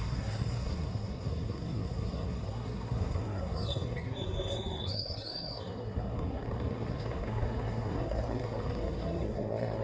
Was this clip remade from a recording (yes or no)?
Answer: yes